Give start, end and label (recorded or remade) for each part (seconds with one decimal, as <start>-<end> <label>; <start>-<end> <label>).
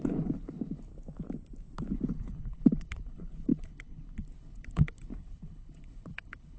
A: 0.0-0.9 remade; 0.9-1.9 recorded; 1.9-6.6 remade